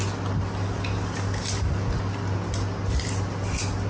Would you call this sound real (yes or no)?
yes